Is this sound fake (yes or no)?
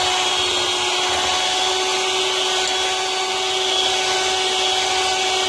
no